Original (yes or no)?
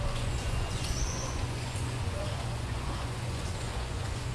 no